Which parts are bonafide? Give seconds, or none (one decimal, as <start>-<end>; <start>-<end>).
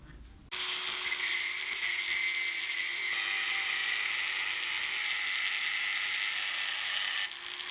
0.0-7.7